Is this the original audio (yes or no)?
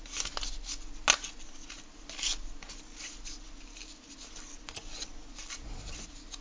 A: yes